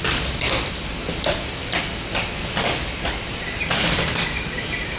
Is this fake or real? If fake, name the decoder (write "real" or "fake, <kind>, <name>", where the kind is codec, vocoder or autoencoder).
real